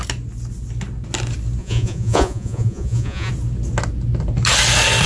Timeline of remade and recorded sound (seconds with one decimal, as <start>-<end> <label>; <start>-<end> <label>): 0.0-1.6 recorded; 1.6-3.3 remade; 3.3-5.1 recorded